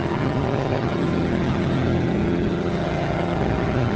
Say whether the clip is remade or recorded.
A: remade